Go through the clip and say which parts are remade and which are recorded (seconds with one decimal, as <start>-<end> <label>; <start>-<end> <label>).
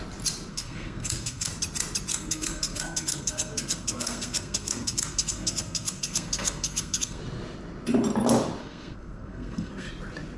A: 0.0-0.5 recorded; 0.5-1.5 remade; 1.5-2.1 recorded; 2.1-7.2 remade; 7.2-8.6 recorded; 8.6-9.9 remade; 9.9-10.4 recorded